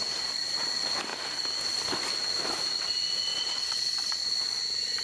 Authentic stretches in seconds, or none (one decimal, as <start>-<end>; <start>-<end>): 0.0-3.3; 4.6-5.0